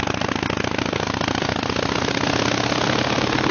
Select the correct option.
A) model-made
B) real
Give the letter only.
B